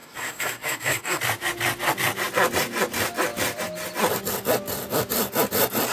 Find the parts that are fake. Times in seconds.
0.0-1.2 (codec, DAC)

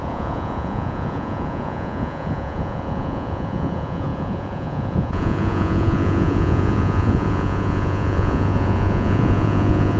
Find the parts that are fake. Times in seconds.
0.0-10.0 (vocoder, Vocos)

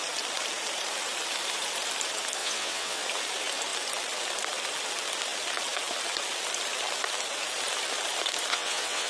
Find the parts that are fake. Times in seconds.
2.4-3.0 (vocoder, WaveNeXt); 8.5-9.1

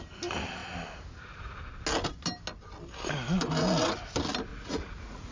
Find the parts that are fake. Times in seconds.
4.5-5.3 (vocoder, Vocos)

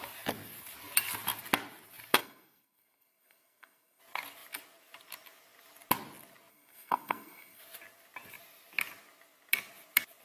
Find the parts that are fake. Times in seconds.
2.2-4.0 (codec, SNAC); 6.5-7.6